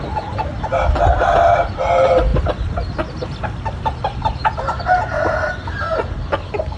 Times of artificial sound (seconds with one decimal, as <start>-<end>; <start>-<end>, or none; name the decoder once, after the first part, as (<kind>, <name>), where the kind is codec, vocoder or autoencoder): none